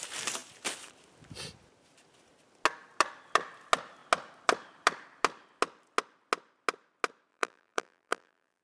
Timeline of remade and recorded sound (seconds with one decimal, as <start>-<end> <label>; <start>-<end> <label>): 0.0-7.3 recorded; 7.3-8.6 remade